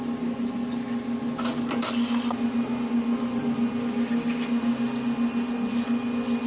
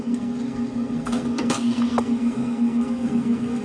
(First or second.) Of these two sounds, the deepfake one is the second